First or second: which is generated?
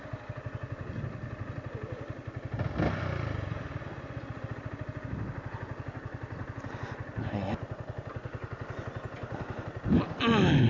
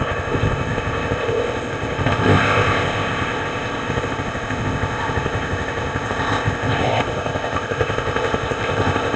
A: second